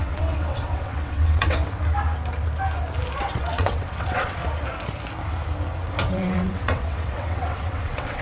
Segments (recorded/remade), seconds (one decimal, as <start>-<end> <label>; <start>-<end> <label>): 0.0-1.8 remade; 1.8-3.2 recorded; 3.2-4.4 remade; 4.4-6.1 recorded; 6.1-8.2 remade

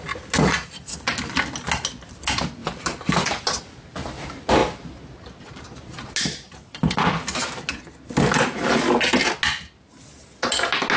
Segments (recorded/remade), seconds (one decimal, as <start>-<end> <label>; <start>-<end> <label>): 0.0-11.0 recorded